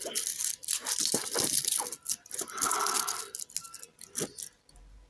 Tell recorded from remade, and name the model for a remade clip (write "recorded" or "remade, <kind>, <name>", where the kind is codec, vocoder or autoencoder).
recorded